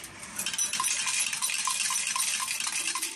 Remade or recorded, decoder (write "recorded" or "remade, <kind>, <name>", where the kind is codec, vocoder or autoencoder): recorded